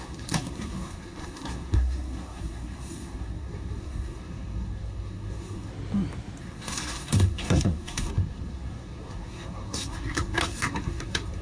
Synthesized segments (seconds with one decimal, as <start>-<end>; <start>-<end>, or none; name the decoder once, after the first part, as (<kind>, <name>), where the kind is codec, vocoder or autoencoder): 0.0-5.7 (codec, SNAC); 6.4-11.4

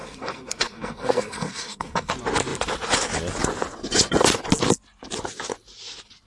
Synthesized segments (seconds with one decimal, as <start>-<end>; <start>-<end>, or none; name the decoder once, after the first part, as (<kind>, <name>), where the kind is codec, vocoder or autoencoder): 0.0-2.1 (codec, SNAC)

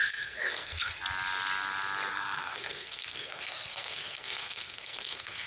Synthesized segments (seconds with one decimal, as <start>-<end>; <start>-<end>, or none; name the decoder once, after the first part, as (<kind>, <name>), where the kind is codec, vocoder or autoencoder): 0.0-0.9 (codec, SNAC); 2.1-5.5

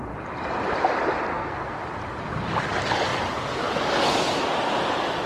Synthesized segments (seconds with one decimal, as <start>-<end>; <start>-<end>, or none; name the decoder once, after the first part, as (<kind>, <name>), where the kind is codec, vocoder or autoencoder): 1.3-1.8 (codec, SNAC)

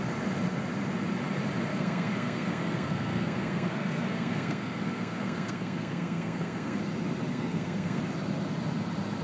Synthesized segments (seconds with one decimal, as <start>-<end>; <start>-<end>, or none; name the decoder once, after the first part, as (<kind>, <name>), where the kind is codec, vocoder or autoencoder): 1.7-6.8 (codec, SNAC); 7.3-8.0